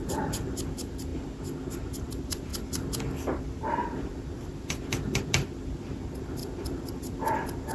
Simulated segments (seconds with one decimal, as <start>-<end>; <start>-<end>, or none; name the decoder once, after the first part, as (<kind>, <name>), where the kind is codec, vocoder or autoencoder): 0.0-1.1 (vocoder, BigVGAN v2); 2.0-2.5; 3.4-7.7